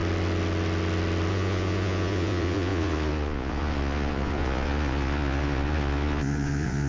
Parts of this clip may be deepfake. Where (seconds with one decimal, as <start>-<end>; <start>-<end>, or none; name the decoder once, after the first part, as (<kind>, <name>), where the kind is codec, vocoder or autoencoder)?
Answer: 1.3-6.9 (vocoder, Vocos)